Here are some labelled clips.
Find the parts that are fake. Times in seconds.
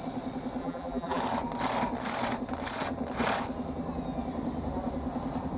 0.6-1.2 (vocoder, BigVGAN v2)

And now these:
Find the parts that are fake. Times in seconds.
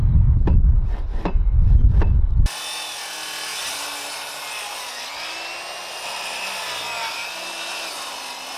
none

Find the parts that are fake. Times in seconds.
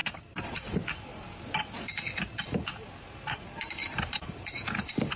3.8-4.4 (vocoder, BigVGAN v2)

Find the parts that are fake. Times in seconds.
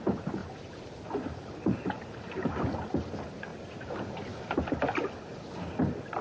0.4-2.6 (vocoder, BigVGAN v2); 3.5-4.6